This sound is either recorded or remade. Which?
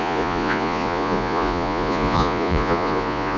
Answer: remade